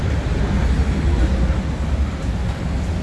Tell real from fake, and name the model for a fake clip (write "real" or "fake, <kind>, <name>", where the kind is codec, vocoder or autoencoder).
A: real